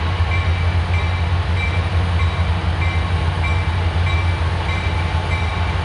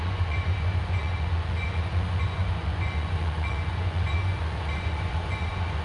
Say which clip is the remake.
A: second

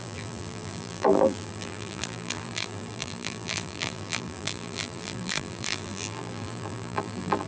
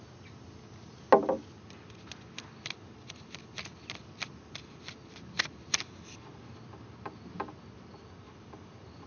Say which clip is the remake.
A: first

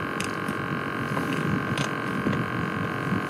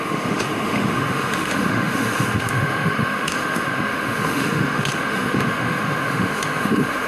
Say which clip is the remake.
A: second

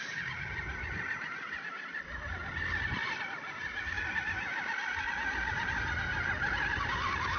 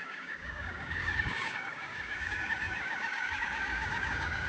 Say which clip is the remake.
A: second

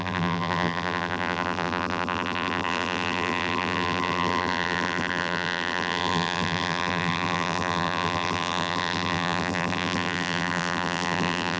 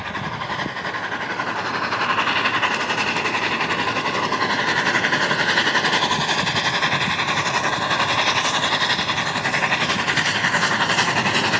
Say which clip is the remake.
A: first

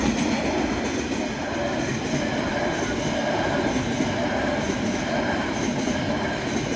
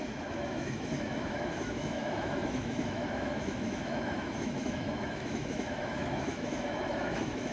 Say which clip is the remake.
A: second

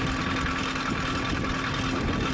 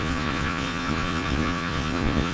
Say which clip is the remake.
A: second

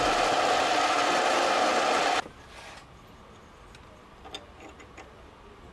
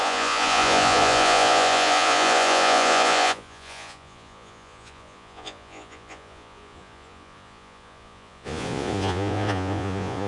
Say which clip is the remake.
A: second